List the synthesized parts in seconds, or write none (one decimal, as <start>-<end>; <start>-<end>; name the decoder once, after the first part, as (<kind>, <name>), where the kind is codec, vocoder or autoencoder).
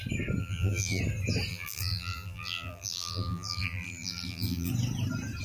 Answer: 0.4-1.0 (vocoder, BigVGAN v2); 1.5-4.7